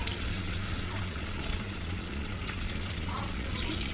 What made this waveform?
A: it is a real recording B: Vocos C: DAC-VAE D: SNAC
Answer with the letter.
B